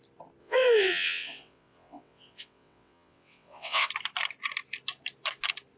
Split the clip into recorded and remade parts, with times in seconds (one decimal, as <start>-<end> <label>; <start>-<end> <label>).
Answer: 0.0-0.4 recorded; 0.4-3.9 remade; 3.9-5.8 recorded